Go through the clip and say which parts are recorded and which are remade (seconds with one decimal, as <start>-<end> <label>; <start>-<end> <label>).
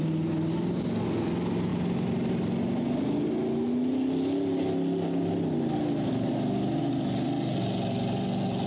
0.0-8.7 recorded